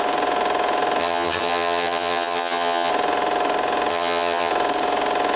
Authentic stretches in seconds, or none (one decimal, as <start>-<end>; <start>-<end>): 0.0-1.0; 2.9-3.9; 4.5-5.4